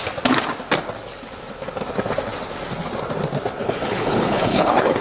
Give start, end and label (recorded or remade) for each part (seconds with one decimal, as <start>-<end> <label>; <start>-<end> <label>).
0.0-3.6 recorded; 3.6-5.0 remade